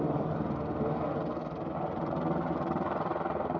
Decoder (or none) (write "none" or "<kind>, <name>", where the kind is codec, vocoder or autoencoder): none